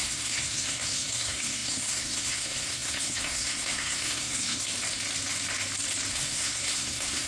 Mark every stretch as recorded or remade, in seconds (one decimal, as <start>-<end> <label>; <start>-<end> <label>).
0.0-4.7 remade; 4.7-6.1 recorded; 6.1-7.3 remade